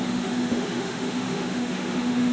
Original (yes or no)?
no